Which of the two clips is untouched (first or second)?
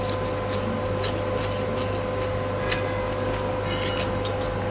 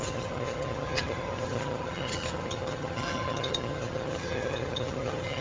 first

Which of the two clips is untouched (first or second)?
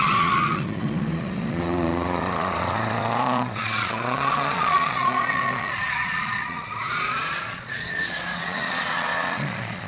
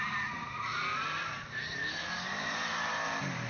second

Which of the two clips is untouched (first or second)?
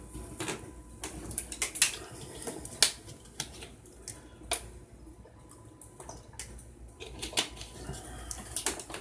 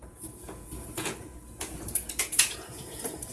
first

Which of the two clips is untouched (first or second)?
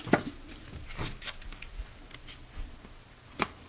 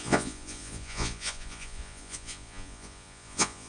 first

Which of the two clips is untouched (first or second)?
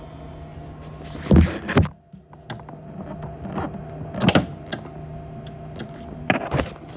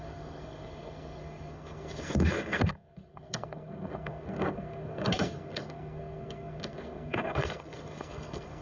first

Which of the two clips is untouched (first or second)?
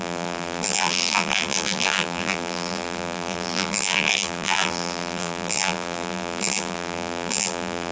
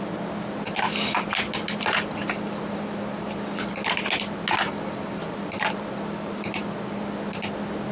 second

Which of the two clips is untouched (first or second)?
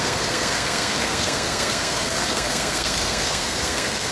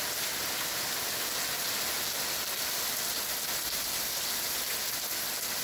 second